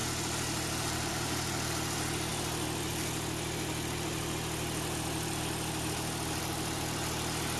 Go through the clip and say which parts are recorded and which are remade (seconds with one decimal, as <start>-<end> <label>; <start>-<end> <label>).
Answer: 0.0-7.6 recorded